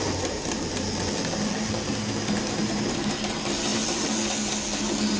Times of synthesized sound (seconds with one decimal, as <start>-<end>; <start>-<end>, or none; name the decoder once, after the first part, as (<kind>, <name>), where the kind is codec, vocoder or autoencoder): none